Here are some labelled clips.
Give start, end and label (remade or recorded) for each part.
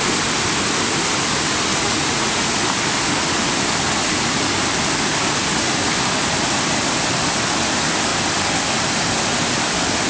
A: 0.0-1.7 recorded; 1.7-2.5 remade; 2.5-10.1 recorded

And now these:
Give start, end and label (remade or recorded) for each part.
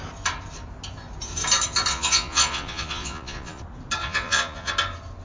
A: 0.0-1.9 recorded; 1.9-3.6 remade; 3.6-4.0 recorded; 4.0-4.7 remade; 4.7-5.2 recorded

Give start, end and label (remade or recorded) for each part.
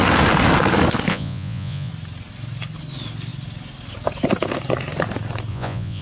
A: 0.0-1.1 recorded; 1.1-1.9 remade; 1.9-5.5 recorded; 5.5-6.0 remade